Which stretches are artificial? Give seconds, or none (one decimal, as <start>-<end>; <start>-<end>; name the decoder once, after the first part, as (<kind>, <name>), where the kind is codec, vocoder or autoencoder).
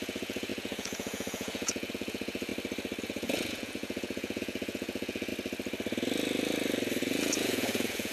0.0-2.5 (vocoder, Vocos); 3.0-5.3; 7.0-8.1